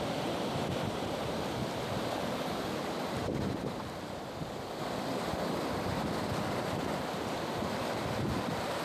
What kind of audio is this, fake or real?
fake